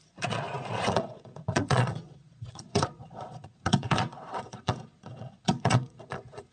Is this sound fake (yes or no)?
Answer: yes